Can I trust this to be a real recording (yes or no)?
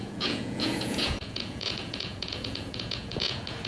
no